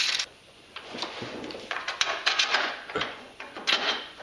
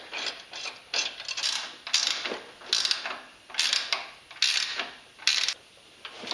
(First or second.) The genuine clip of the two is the second